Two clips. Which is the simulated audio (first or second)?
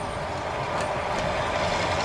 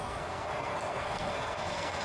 second